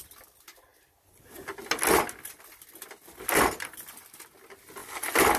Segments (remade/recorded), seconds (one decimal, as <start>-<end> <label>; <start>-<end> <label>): 0.0-5.4 recorded